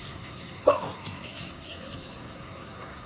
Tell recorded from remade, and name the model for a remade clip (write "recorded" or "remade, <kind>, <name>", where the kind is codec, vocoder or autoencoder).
remade, codec, SNAC